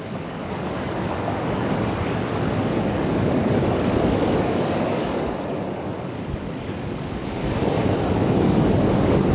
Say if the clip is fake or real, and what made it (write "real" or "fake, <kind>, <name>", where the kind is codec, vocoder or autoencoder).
fake, codec, DAC